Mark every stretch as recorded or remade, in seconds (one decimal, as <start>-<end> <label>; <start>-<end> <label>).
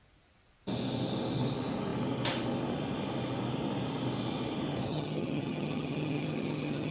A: 0.0-4.9 recorded; 4.9-6.9 remade